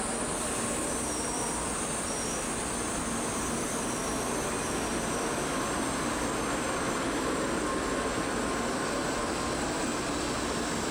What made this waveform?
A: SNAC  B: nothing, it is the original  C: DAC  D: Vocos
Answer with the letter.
B